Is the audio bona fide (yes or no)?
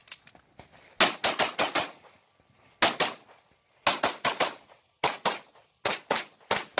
yes